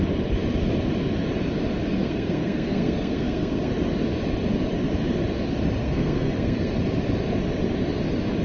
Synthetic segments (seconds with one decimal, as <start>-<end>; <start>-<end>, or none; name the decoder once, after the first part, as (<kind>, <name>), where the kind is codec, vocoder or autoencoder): 2.0-3.7 (codec, SNAC); 5.8-6.7

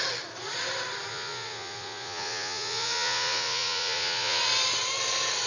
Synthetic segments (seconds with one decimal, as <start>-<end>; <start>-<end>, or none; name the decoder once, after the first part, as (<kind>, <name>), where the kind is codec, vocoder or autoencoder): 1.1-4.4 (vocoder, Vocos)

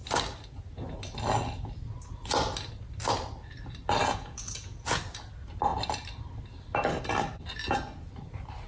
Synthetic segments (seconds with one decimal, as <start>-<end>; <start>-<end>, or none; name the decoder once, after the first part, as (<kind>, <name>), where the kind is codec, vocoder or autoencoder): 4.0-5.0 (vocoder, Vocos)

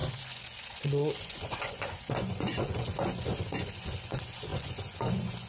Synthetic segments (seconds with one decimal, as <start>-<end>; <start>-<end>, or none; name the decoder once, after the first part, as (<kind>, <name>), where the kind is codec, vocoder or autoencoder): 0.0-5.5 (vocoder, Vocos)

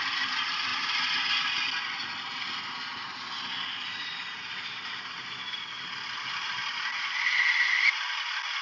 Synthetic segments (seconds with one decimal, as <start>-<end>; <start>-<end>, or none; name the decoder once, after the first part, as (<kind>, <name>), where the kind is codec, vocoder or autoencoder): 4.0-6.4 (vocoder, BigVGAN v2)

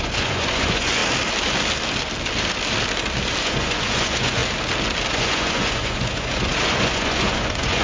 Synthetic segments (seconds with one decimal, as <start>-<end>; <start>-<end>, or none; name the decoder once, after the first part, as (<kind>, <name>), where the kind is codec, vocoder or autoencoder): 0.0-1.0 (vocoder, Vocos); 3.4-4.4; 5.1-7.8

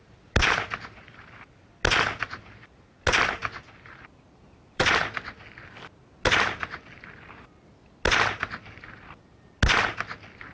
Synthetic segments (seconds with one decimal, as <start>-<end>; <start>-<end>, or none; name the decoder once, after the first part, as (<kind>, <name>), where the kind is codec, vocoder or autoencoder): 3.4-5.0 (vocoder, BigVGAN v2)